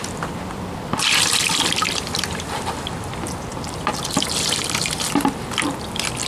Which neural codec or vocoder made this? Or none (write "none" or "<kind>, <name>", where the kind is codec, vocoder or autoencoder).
vocoder, BigVGAN v2